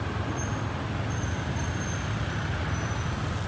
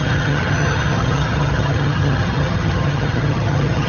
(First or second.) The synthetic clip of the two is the second